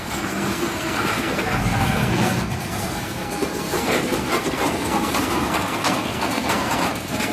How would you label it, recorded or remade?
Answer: remade